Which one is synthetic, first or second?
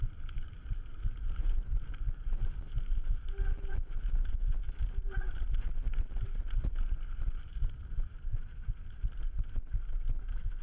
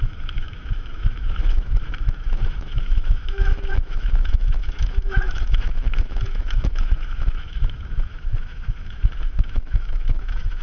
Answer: second